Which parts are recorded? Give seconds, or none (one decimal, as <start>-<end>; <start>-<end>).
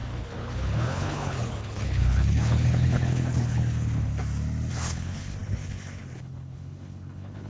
4.1-4.7